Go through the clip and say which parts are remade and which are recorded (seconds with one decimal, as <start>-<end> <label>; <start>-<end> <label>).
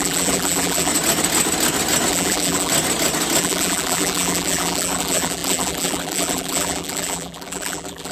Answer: 0.0-0.9 remade; 0.9-2.1 recorded; 2.1-2.7 remade; 2.7-3.4 recorded; 3.4-8.1 remade